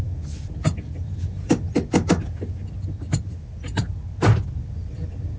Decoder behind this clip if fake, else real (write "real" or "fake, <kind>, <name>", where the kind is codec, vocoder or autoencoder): real